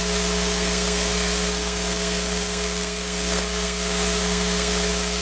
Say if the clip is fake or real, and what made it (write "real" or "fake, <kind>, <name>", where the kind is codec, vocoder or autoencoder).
fake, codec, SNAC